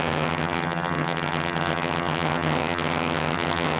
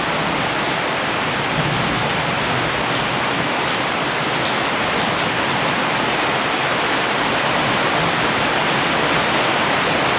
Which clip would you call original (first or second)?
second